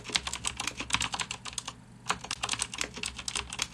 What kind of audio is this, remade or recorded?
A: recorded